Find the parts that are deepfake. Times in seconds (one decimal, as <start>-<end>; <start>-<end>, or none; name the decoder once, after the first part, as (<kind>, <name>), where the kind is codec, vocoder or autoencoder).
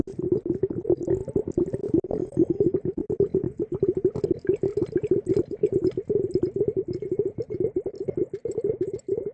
none